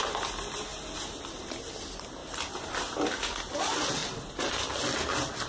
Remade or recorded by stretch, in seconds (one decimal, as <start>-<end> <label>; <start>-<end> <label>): 0.0-4.0 recorded; 4.0-4.5 remade; 4.5-5.5 recorded